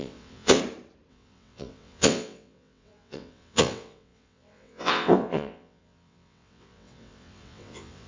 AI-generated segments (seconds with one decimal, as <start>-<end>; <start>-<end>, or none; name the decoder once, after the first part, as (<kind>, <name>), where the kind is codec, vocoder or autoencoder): 0.0-0.6 (vocoder, WaveNeXt); 1.1-8.1